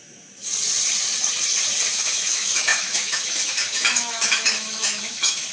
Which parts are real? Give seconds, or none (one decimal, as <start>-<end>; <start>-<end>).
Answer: 0.4-1.9